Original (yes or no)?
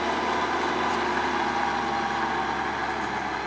yes